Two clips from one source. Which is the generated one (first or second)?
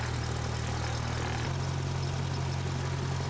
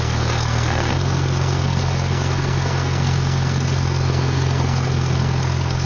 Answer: second